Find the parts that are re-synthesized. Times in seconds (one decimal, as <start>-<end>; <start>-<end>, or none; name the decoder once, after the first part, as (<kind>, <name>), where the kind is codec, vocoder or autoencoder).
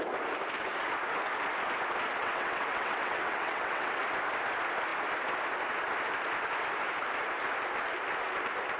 2.2-4.0 (vocoder, WaveNeXt)